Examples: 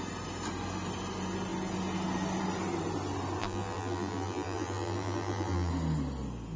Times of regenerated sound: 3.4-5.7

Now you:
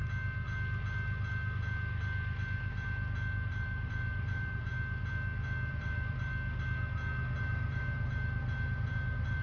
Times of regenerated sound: 3.5-4.7; 5.7-6.3; 7.4-9.4

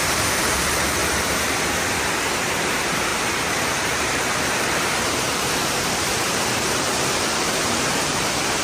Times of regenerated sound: 0.0-1.0; 2.6-8.6